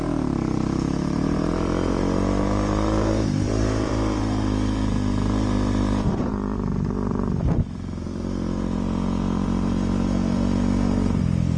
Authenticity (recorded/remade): remade